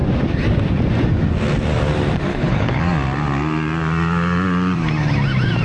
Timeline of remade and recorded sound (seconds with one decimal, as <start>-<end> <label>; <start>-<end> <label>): 0.0-2.3 recorded; 2.3-2.8 remade; 2.8-5.6 recorded